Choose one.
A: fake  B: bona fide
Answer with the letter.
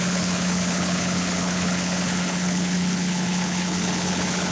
A